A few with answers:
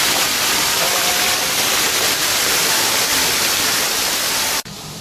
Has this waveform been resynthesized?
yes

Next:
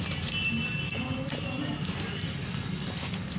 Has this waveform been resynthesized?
no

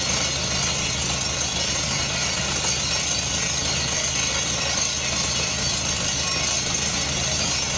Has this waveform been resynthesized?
no